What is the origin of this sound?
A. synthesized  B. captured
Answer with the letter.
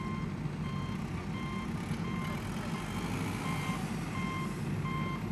B